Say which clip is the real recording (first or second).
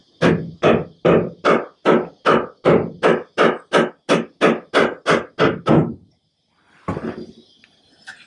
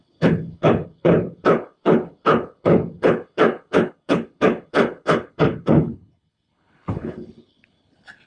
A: first